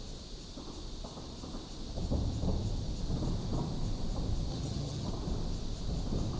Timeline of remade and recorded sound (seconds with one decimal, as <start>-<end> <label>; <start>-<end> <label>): 0.0-4.5 recorded; 4.5-5.1 remade; 5.1-6.4 recorded